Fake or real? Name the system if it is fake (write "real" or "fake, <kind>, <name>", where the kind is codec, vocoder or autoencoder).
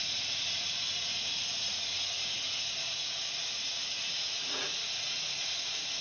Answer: fake, vocoder, Vocos